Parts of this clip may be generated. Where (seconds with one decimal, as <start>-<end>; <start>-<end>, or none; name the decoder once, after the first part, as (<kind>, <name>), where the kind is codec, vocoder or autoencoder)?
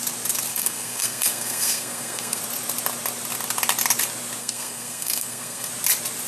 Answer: 0.5-2.4 (codec, SNAC); 4.4-5.7